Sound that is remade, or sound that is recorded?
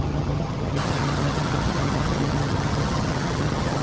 remade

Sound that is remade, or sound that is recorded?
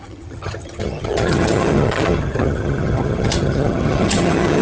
remade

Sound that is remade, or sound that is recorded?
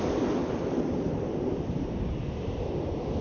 recorded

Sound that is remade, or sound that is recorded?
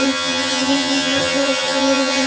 remade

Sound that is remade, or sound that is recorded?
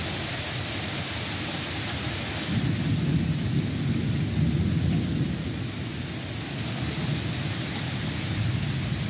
recorded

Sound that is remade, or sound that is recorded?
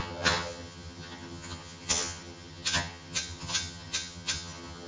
remade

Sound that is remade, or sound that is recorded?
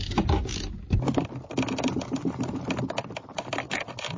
recorded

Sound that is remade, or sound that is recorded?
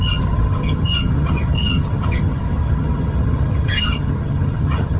remade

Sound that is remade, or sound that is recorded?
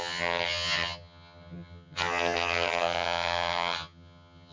remade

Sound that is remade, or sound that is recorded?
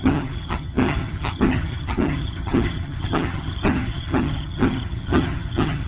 remade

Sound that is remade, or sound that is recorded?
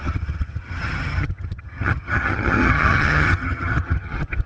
remade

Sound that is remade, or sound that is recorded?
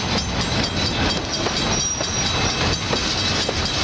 recorded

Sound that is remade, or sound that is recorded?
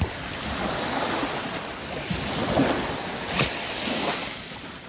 recorded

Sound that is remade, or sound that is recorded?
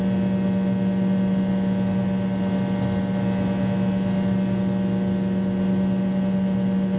recorded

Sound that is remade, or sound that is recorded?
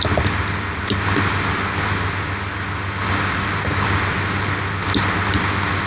recorded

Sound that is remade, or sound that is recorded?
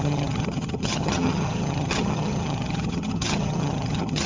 remade